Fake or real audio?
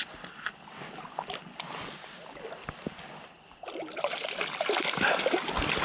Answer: real